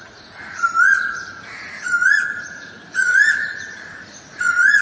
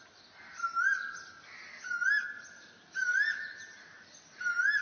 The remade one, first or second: first